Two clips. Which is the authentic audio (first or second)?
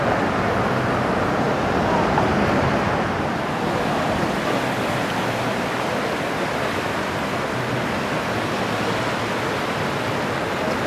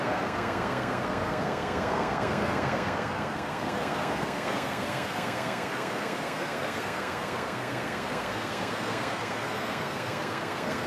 first